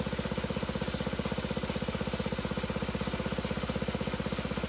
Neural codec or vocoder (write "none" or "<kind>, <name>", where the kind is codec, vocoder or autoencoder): none